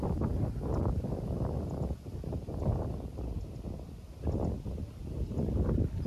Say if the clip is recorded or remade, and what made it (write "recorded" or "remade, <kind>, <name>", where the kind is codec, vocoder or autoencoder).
recorded